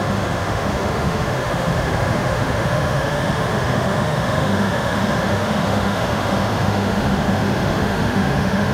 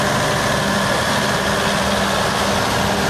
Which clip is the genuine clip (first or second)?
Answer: second